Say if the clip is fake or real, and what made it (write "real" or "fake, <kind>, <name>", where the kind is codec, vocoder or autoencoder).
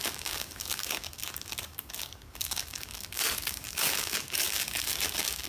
fake, codec, DAC